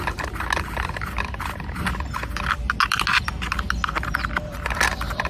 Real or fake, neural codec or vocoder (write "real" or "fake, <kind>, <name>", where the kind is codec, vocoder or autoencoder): real